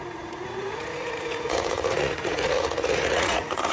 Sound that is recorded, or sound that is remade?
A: remade